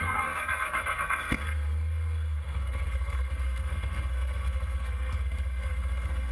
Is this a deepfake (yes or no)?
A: yes